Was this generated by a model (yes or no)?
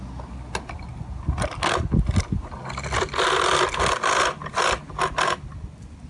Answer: no